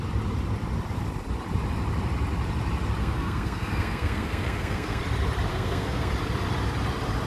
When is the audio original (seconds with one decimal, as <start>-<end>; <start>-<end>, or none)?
0.0-3.0; 5.0-5.5; 6.1-7.3